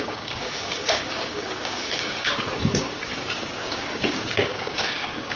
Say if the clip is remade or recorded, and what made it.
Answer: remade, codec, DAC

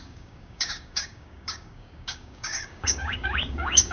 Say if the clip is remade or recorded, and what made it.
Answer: remade, codec, DAC